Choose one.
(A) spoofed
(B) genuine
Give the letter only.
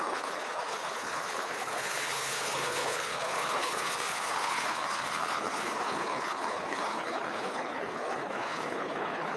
A